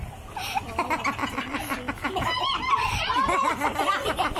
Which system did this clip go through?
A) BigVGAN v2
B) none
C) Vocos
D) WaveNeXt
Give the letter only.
B